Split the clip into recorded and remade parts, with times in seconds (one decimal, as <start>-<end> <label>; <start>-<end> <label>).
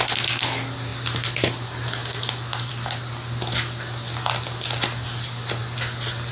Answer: 0.0-6.3 recorded